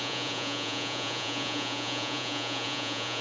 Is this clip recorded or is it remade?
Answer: remade